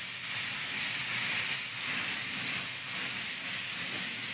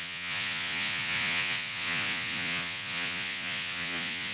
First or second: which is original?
first